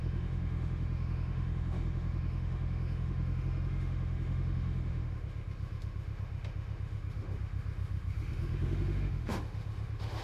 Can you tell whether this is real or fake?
fake